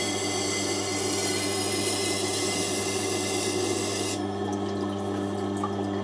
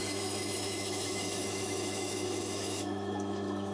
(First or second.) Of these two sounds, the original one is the first